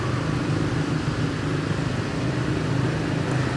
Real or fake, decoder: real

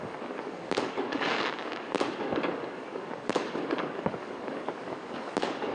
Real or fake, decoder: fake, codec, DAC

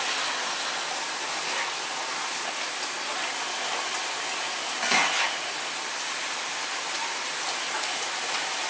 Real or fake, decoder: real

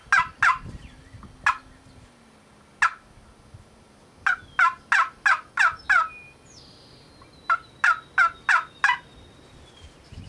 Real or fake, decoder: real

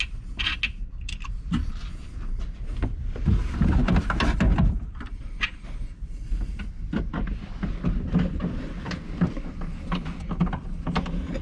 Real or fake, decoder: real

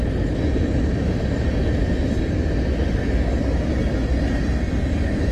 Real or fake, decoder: real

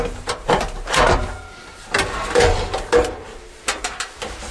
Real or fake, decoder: fake, vocoder, BigVGAN v2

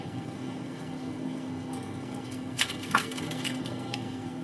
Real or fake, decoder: fake, codec, SNAC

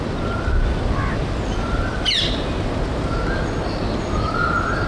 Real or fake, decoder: real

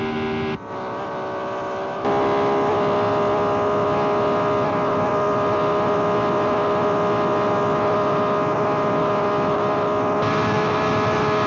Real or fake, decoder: real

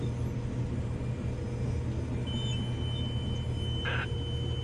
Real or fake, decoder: real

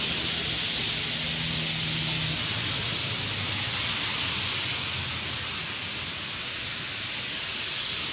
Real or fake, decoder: real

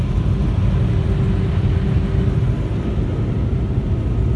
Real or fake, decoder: real